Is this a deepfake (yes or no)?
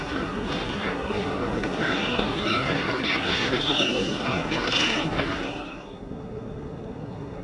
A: yes